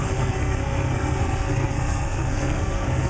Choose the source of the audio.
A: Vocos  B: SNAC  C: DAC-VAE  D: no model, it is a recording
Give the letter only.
B